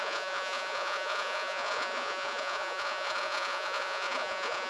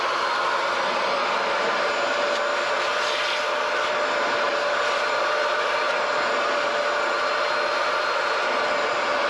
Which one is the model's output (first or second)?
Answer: first